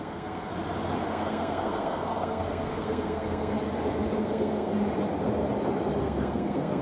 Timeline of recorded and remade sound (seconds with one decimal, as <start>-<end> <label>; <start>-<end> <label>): 0.0-0.5 remade; 0.5-1.0 recorded; 1.0-3.5 remade; 3.5-4.2 recorded; 4.2-4.7 remade; 4.7-6.0 recorded; 6.0-6.8 remade